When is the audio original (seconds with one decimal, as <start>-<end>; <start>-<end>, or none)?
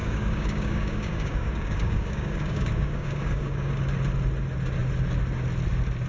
3.7-6.1